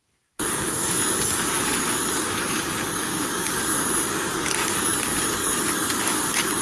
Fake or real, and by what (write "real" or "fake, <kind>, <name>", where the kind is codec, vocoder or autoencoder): fake, codec, DAC